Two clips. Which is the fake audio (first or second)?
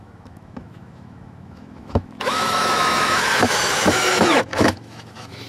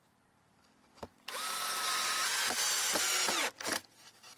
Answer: first